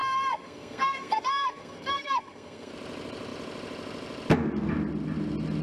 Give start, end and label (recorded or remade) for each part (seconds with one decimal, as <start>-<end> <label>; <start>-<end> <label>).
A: 0.0-2.7 remade; 2.7-5.6 recorded